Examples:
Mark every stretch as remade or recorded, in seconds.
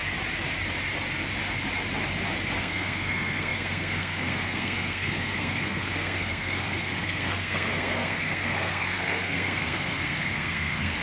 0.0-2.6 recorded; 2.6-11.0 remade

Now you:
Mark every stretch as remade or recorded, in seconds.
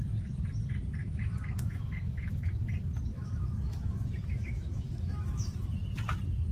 0.0-1.0 recorded; 1.0-2.5 remade; 2.5-3.1 recorded; 3.1-5.7 remade; 5.7-6.5 recorded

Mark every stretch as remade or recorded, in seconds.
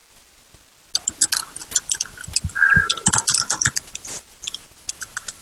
0.0-1.6 recorded; 1.6-4.8 remade; 4.8-5.4 recorded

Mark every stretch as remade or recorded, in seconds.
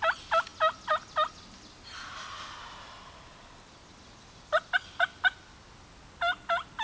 0.0-6.8 recorded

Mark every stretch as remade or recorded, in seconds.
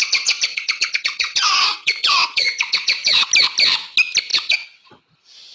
0.0-3.3 remade; 3.3-4.3 recorded; 4.3-5.0 remade; 5.0-5.5 recorded